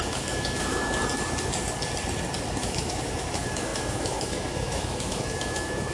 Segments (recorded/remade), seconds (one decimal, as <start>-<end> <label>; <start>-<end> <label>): 0.0-1.0 remade; 1.0-2.6 recorded; 2.6-5.9 remade